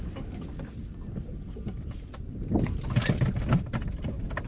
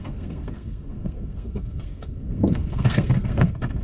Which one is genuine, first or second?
first